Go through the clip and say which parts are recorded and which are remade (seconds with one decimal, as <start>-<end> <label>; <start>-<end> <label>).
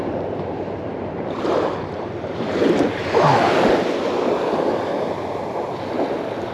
0.0-3.9 remade; 3.9-6.5 recorded